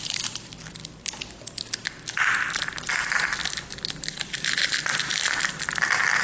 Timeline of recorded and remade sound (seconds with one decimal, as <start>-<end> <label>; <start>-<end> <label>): 0.0-0.8 remade; 0.8-2.9 recorded; 2.9-3.4 remade; 3.4-4.1 recorded; 4.1-6.2 remade